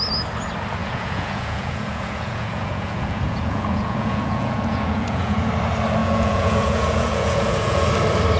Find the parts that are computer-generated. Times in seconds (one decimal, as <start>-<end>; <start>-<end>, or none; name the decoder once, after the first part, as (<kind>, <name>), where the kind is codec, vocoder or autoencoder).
0.8-5.5 (vocoder, Vocos); 6.0-7.9

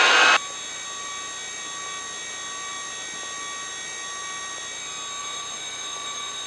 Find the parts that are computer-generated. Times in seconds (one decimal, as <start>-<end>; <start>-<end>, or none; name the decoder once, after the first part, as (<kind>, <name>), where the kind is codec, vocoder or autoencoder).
5.2-6.5 (vocoder, Vocos)

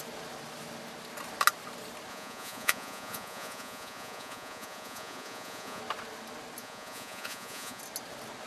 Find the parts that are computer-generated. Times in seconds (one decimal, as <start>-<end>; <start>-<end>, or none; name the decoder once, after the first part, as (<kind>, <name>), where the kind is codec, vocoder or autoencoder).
2.1-5.8 (vocoder, Vocos); 6.6-7.8

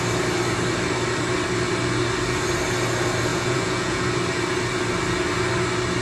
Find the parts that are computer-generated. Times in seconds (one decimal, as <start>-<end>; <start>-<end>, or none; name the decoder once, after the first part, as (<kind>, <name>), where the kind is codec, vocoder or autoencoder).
3.3-4.0 (vocoder, Vocos)

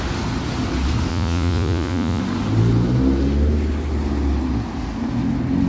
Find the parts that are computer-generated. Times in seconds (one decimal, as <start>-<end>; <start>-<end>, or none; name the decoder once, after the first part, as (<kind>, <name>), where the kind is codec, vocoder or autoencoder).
1.1-2.2 (vocoder, Vocos)